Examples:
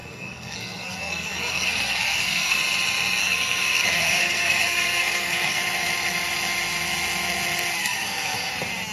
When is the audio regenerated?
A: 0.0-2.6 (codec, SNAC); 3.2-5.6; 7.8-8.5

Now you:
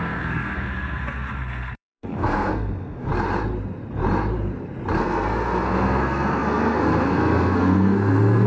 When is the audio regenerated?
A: 0.0-3.1 (codec, SNAC); 5.0-8.5

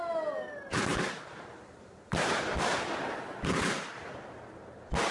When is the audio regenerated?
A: 0.9-2.6 (vocoder, BigVGAN v2)

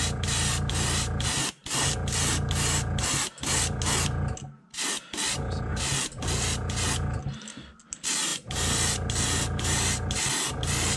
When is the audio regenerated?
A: none

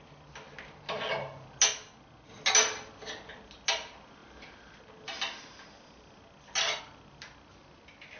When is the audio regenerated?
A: none

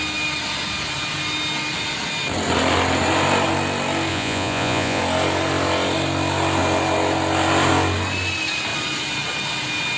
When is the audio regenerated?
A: 4.1-5.0 (vocoder, Vocos)

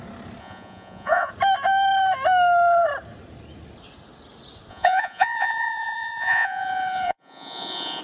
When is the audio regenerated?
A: 0.4-1.3 (vocoder, Vocos); 4.7-8.0

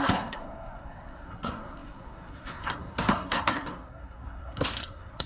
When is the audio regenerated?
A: 0.0-5.3 (codec, SNAC)